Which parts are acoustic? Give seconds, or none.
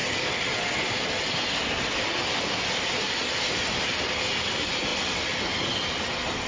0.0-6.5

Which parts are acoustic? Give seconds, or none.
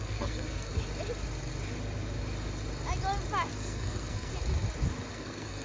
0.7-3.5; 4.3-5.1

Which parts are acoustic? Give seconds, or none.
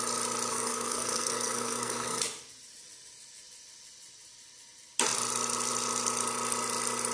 0.0-0.5; 2.2-7.1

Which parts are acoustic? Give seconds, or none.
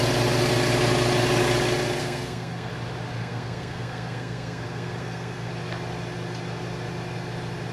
0.0-2.0; 2.7-3.2; 5.5-7.7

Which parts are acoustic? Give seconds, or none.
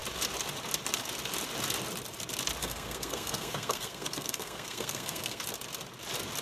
0.0-2.6; 5.4-6.4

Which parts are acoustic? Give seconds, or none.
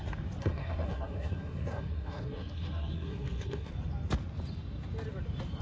0.0-0.4; 3.7-5.6